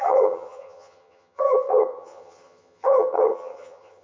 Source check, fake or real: fake